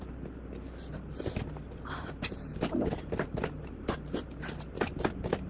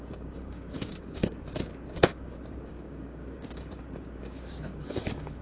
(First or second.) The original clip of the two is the first